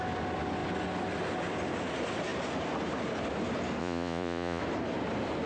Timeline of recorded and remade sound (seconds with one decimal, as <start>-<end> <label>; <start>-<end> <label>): 0.0-3.8 recorded; 3.8-4.6 remade; 4.6-5.5 recorded